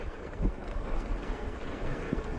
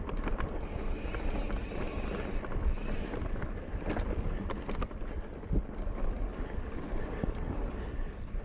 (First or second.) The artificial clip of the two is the first